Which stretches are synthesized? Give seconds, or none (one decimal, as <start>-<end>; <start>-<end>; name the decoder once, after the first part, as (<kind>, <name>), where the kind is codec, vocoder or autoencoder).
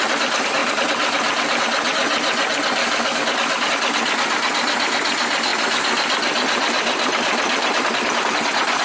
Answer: 2.8-3.7 (codec, DAC)